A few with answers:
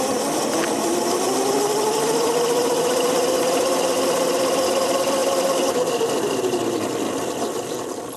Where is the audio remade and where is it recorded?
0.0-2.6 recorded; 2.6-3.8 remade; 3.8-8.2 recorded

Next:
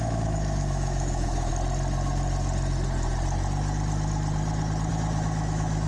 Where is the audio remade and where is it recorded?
0.0-1.5 remade; 1.5-4.9 recorded; 4.9-5.9 remade

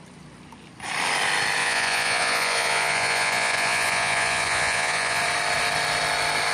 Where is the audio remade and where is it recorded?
0.0-1.6 recorded; 1.6-5.2 remade; 5.2-6.5 recorded

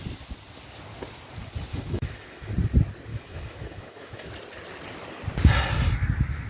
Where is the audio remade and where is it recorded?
0.0-1.7 recorded; 1.7-2.5 remade; 2.5-3.1 recorded; 3.1-4.3 remade; 4.3-6.5 recorded

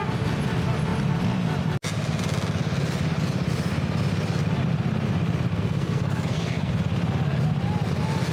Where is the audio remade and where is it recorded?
0.0-5.5 recorded; 5.5-6.7 remade; 6.7-8.3 recorded

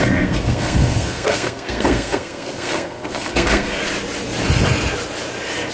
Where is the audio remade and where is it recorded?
0.0-3.8 remade; 3.8-5.7 recorded

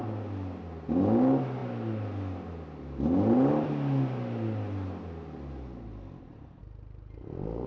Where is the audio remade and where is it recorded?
0.0-7.7 recorded

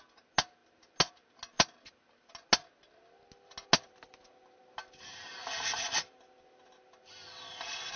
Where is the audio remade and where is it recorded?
0.0-8.0 recorded